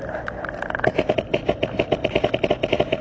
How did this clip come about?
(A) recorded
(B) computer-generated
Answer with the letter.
A